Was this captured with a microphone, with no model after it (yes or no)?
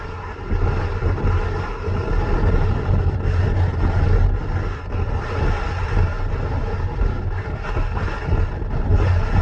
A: yes